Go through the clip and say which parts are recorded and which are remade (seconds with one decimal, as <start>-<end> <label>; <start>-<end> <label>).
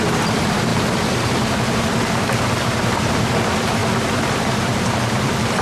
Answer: 0.0-0.7 remade; 0.7-2.6 recorded; 2.6-5.6 remade